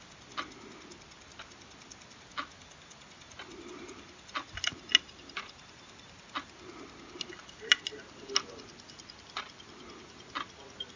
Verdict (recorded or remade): recorded